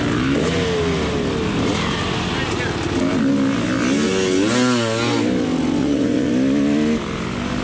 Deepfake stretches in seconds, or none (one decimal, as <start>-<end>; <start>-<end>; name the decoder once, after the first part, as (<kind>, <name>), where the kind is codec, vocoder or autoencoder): 5.8-6.3 (vocoder, Vocos)